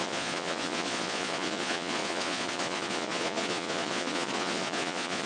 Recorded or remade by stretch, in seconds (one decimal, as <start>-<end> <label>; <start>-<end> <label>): 0.0-5.3 remade